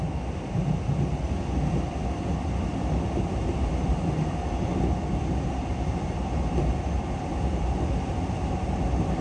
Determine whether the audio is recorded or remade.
recorded